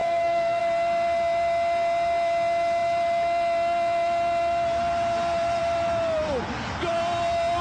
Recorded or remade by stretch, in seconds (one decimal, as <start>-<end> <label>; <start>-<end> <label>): 0.0-0.6 remade; 0.6-7.6 recorded